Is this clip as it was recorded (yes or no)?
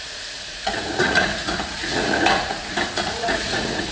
no